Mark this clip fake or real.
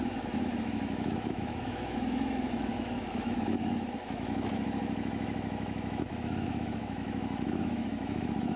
fake